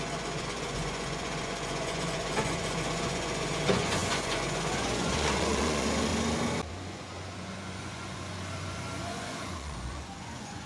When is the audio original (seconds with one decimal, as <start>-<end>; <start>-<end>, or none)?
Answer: 6.1-6.7